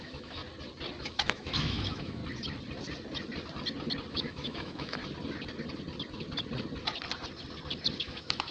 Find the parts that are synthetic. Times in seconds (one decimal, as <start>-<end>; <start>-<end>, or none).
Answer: 0.0-0.4; 1.0-2.2; 4.1-5.0; 8.0-8.5